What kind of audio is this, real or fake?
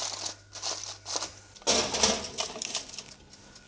real